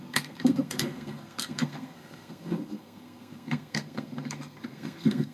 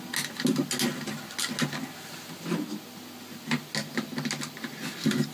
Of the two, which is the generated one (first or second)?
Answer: first